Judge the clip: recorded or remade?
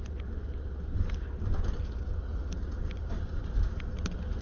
recorded